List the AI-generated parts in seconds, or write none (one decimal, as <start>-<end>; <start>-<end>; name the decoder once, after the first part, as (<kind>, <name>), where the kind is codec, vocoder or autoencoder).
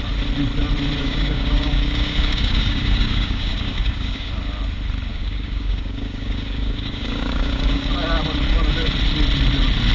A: 1.0-4.3 (codec, DAC); 5.1-7.9